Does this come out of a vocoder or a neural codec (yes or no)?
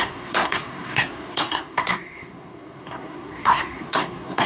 yes